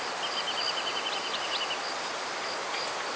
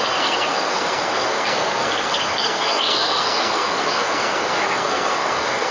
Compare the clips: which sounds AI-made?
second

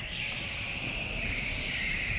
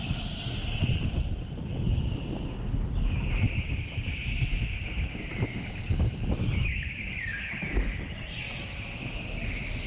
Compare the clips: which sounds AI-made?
first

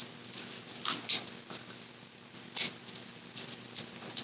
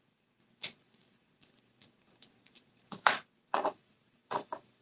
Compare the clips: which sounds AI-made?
second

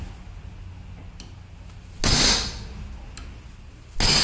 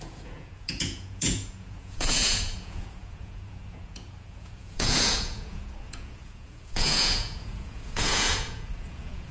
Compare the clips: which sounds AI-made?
second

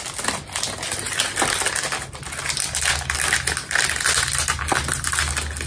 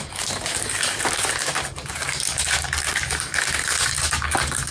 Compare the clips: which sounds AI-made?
second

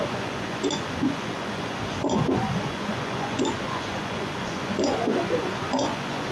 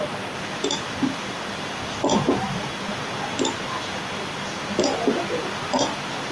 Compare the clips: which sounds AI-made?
first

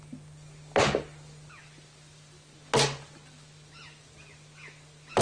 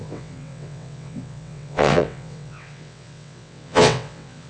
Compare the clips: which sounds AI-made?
second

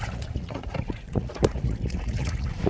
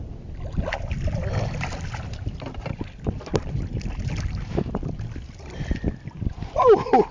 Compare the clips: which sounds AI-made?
first